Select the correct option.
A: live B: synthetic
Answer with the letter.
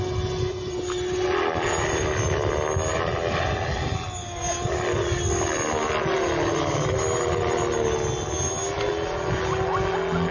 A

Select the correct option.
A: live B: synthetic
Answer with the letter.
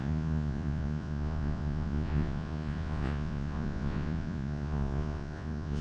B